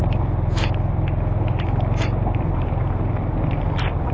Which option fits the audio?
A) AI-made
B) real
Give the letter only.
B